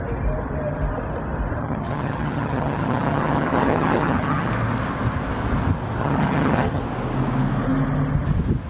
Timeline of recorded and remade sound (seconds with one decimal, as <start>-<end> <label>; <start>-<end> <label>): 0.0-1.6 recorded; 1.6-4.5 remade; 4.5-6.0 recorded; 6.0-6.8 remade; 6.8-8.7 recorded